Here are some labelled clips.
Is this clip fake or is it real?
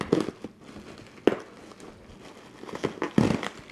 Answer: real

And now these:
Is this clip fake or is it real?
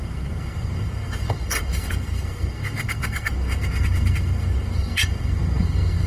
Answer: fake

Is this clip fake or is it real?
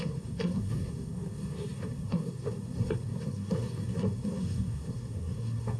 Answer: fake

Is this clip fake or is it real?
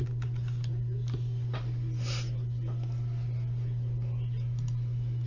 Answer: real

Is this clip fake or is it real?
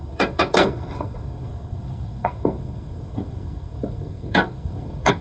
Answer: fake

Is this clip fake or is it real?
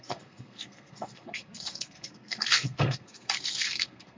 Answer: fake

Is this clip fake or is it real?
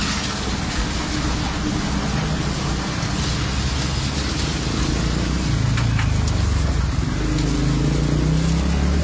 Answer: real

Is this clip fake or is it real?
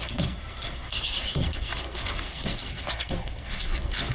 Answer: fake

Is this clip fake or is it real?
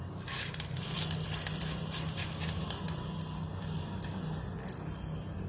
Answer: real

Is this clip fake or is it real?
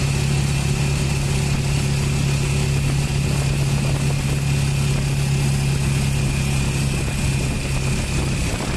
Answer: real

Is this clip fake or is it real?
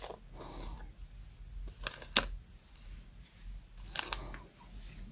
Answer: real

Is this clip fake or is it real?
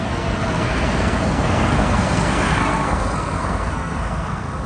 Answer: fake